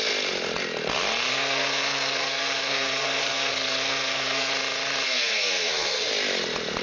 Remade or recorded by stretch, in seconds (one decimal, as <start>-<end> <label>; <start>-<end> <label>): 0.0-1.3 recorded; 1.3-4.5 remade; 4.5-5.1 recorded; 5.1-6.1 remade; 6.1-6.8 recorded